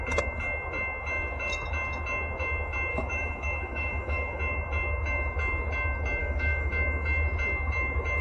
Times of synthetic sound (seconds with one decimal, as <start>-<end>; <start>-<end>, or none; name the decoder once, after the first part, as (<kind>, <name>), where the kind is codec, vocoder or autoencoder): 2.9-4.4 (autoencoder, DAC-VAE); 6.2-6.7